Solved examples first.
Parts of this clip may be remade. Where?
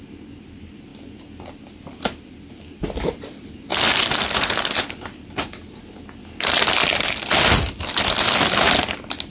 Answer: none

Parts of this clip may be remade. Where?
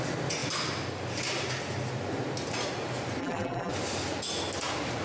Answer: 3.2-3.7 (vocoder, BigVGAN v2)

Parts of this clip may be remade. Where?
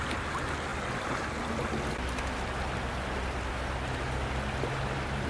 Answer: none